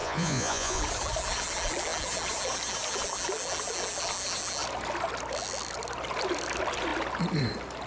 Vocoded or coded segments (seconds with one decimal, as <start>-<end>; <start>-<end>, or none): 0.0-0.8